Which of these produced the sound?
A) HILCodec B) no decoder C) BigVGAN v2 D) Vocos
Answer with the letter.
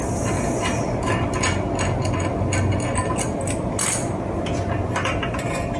B